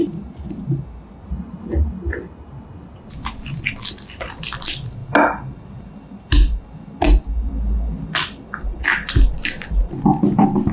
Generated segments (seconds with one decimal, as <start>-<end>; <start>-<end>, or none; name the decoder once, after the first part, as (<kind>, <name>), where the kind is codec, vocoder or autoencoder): none

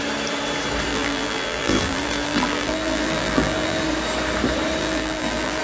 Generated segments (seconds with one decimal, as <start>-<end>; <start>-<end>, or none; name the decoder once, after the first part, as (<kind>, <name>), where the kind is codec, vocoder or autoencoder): 0.9-3.8 (vocoder, BigVGAN v2); 4.8-5.6

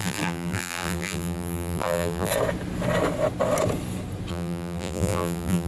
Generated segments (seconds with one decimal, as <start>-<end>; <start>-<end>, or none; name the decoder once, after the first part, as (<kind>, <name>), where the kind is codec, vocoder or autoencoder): 0.0-2.3 (vocoder, BigVGAN v2); 4.3-5.7

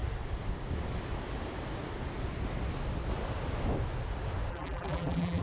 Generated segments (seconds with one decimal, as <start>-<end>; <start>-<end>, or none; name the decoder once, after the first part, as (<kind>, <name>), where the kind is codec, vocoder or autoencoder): 4.5-5.4 (vocoder, BigVGAN v2)

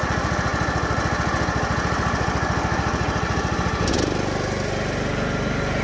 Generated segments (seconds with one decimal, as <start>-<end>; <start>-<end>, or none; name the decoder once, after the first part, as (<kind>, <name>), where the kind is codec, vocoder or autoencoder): none